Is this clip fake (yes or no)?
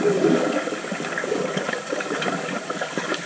yes